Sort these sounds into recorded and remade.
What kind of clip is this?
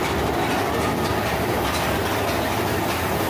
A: recorded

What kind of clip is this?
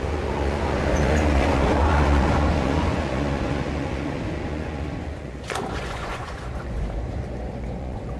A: remade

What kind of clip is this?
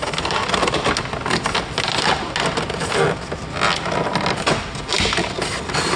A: recorded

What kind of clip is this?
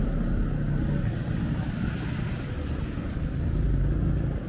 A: recorded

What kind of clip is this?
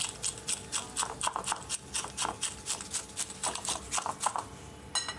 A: recorded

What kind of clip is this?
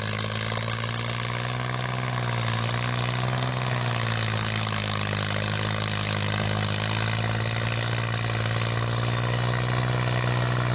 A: recorded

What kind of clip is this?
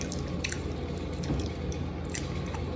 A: recorded